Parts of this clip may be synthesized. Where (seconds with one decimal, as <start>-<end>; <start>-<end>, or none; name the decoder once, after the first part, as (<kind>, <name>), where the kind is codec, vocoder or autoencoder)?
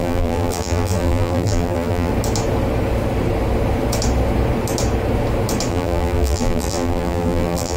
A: 0.0-2.1 (vocoder, BigVGAN v2); 5.7-7.8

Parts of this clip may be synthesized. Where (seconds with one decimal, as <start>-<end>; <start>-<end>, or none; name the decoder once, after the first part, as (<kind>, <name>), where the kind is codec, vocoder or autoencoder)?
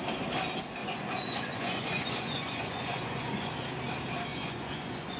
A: 0.8-3.5 (vocoder, Vocos); 4.3-5.2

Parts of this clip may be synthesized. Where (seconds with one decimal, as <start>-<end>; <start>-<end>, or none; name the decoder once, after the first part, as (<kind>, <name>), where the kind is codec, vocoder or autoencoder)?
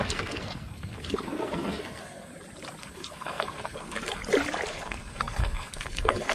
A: 0.0-2.3 (codec, SNAC); 2.8-4.2; 4.7-6.3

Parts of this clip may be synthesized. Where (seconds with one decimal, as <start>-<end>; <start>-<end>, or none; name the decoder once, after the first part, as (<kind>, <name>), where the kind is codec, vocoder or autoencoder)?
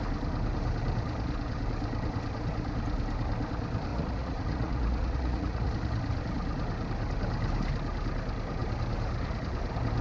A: 3.9-5.7 (vocoder, Vocos)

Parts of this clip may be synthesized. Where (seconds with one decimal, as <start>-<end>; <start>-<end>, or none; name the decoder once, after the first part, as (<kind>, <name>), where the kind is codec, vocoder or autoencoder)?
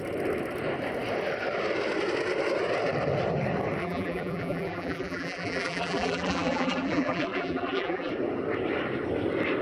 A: 3.8-8.1 (vocoder, BigVGAN v2)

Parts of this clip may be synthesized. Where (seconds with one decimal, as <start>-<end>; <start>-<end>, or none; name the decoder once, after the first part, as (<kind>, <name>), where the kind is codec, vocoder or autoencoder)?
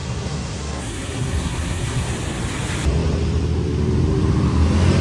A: 0.0-2.1 (codec, SNAC)